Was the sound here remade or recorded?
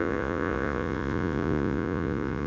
remade